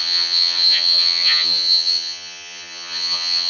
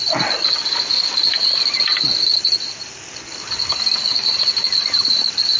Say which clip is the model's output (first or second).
first